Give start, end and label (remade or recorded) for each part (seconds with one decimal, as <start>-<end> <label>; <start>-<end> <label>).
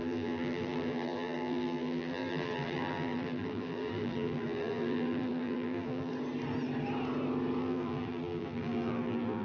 0.0-6.1 remade; 6.1-7.6 recorded; 7.6-9.4 remade